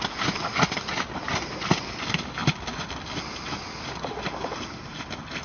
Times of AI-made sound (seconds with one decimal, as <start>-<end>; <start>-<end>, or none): none